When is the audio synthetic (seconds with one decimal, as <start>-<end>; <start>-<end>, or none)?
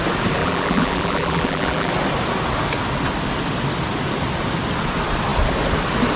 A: 0.4-1.9